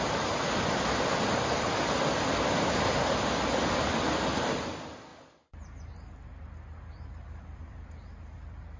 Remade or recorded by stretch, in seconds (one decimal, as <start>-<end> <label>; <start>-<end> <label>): 0.0-8.8 recorded